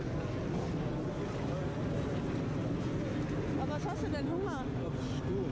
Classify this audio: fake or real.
real